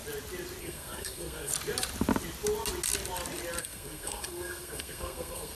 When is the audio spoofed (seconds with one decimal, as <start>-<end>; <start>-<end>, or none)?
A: 0.6-1.5; 3.6-5.5